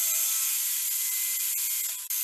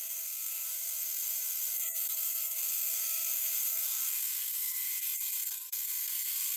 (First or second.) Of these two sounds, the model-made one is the second